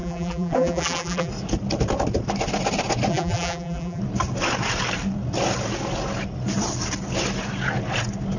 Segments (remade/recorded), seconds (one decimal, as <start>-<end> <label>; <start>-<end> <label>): 0.0-1.3 remade; 1.3-3.1 recorded; 3.1-4.0 remade; 4.0-8.4 recorded